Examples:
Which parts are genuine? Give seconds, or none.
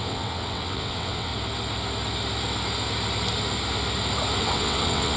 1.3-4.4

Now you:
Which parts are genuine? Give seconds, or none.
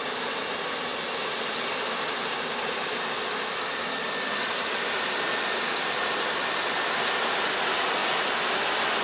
0.0-9.0